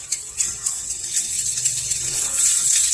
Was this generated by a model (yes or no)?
yes